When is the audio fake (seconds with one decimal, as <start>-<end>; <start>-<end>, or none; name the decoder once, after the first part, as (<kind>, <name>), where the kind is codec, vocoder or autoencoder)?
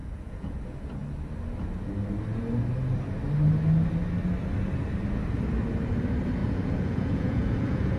0.0-0.6 (vocoder, Vocos); 6.4-8.0